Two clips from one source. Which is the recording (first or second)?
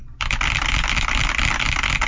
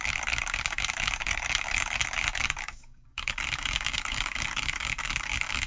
first